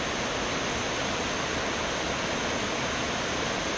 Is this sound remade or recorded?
recorded